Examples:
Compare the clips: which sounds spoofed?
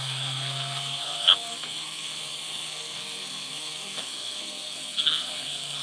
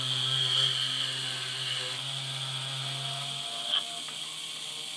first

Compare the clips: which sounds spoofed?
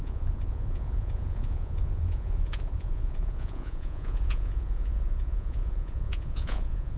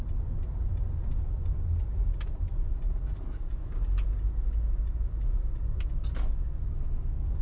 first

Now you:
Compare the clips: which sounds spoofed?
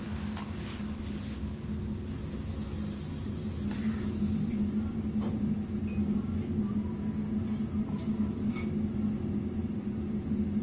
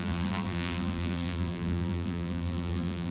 second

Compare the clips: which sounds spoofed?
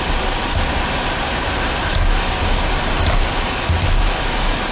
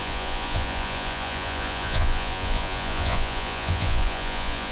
second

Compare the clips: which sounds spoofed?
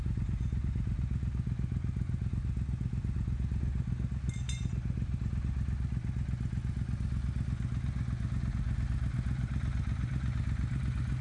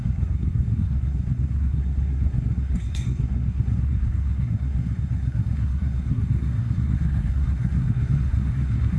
second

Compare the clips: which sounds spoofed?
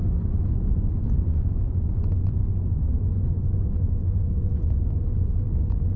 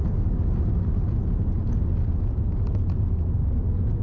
first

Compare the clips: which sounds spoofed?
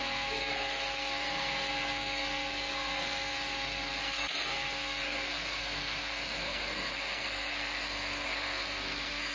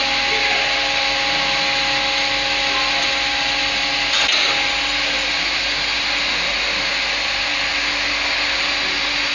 first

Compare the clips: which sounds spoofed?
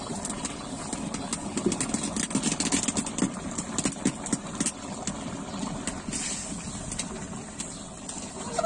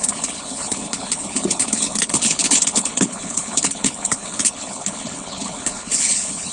second